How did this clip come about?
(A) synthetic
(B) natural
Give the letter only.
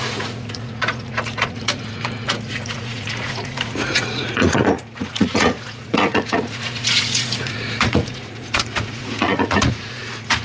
A